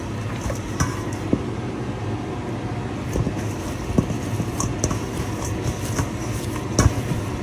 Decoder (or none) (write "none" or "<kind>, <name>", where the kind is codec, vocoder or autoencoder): none